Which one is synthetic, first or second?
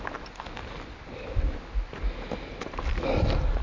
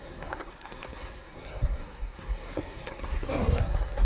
second